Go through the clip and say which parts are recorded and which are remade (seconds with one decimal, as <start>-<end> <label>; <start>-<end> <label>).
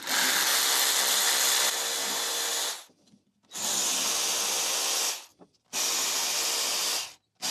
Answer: 0.0-7.5 recorded